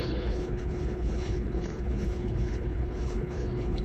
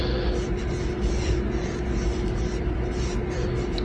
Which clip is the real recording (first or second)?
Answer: second